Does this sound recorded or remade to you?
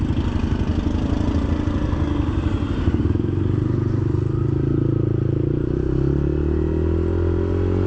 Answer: recorded